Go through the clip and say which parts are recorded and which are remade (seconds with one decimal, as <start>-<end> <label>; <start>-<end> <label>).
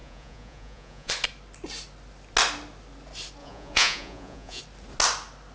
0.0-1.1 remade; 1.1-3.4 recorded; 3.4-4.6 remade; 4.6-5.5 recorded